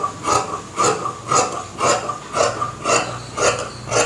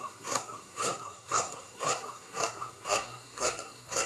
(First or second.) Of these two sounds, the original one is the first